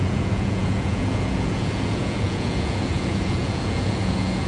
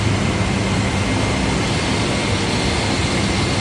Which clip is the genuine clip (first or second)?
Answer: second